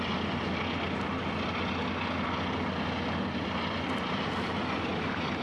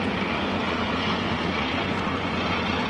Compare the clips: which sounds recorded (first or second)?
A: first